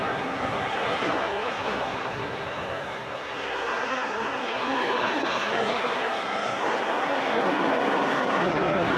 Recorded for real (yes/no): no